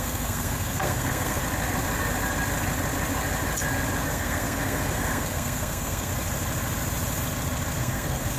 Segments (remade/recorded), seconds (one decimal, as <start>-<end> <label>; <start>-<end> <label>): 0.0-1.4 remade; 1.4-4.1 recorded; 4.1-6.1 remade; 6.1-7.8 recorded; 7.8-8.4 remade